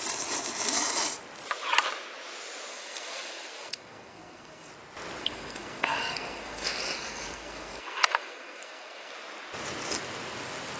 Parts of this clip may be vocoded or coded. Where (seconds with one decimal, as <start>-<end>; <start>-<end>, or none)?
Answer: 2.7-4.7; 5.2-9.1